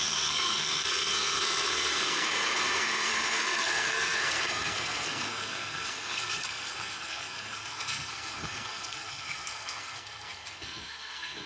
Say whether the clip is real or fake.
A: fake